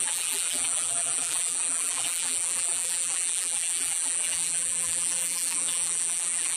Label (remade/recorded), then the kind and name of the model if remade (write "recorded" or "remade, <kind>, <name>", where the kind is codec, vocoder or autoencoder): remade, vocoder, BigVGAN v2